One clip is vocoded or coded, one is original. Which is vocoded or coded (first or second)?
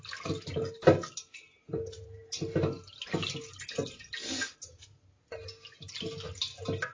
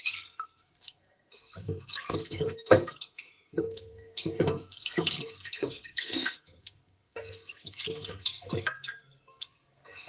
second